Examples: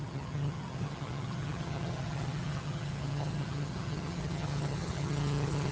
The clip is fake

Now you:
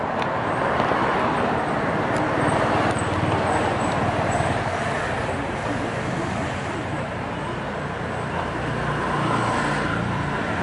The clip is real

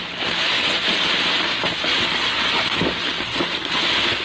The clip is real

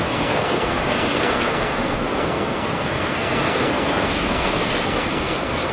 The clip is fake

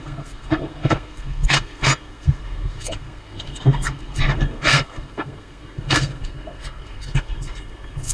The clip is fake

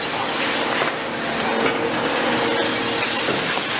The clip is real